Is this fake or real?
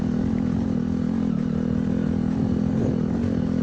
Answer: real